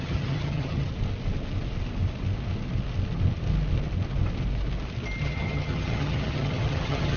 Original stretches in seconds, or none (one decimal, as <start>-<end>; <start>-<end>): 0.9-5.2